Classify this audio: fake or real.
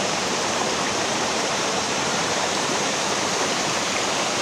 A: fake